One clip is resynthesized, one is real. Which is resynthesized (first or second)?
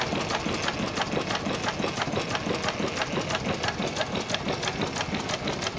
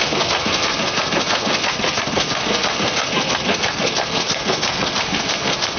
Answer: second